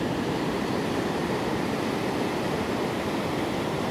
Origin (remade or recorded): remade